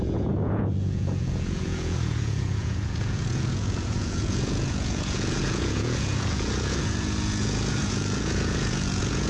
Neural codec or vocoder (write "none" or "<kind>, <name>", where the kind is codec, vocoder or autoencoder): vocoder, Vocos